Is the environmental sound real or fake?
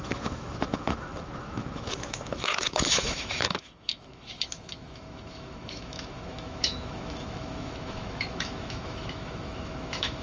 fake